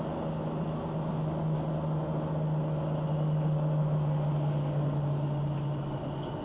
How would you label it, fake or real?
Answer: real